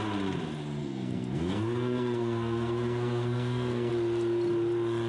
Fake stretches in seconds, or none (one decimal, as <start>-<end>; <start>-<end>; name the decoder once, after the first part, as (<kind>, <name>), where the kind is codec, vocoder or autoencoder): 0.8-3.9 (codec, SNAC)